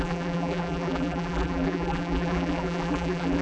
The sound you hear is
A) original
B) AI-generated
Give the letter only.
B